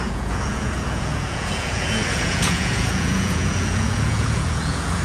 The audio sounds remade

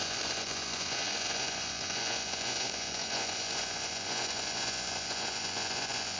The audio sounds remade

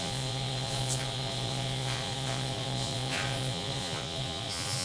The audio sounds remade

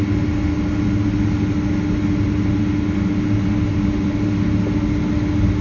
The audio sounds recorded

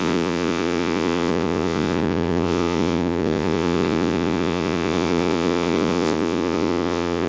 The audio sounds remade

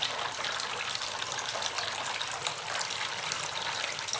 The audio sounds recorded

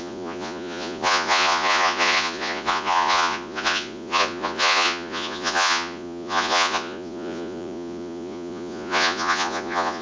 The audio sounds remade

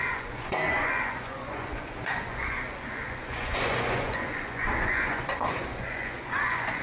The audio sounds remade